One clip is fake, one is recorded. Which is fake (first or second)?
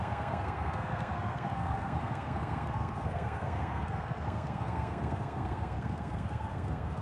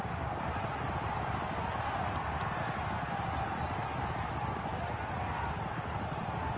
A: first